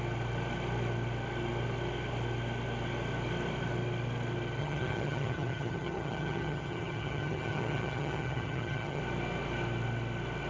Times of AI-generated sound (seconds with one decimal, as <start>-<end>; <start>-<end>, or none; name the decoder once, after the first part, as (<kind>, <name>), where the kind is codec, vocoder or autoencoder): 4.6-9.0 (vocoder, HiFi-GAN)